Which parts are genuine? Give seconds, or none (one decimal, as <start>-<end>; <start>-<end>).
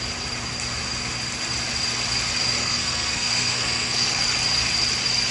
0.0-2.6; 4.2-5.3